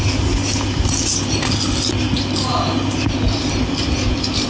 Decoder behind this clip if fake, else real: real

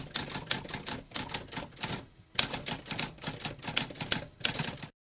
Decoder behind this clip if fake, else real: real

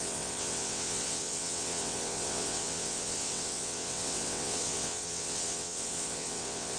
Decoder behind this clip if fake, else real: fake, vocoder, WaveNeXt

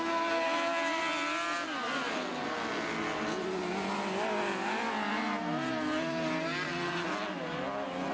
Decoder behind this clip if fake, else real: real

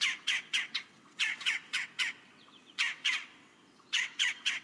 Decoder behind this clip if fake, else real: fake, vocoder, WaveNeXt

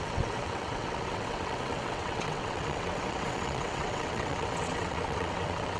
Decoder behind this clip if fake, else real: fake, vocoder, WaveNeXt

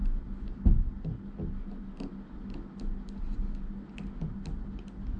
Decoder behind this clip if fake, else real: real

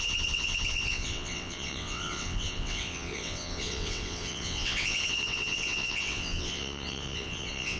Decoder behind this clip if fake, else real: fake, vocoder, WaveNeXt